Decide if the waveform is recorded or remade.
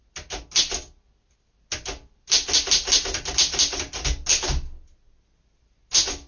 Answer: recorded